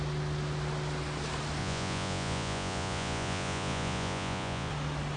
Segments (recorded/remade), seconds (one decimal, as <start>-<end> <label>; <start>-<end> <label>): 0.0-1.6 recorded; 1.6-4.7 remade; 4.7-5.2 recorded